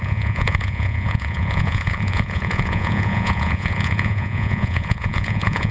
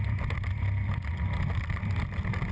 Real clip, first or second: second